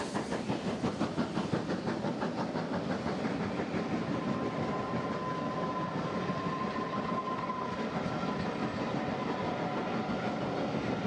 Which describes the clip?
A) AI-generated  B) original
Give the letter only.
B